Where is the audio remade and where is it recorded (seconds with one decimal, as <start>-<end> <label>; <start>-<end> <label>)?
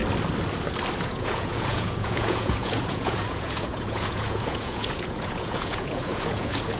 0.0-1.0 recorded; 1.0-6.8 remade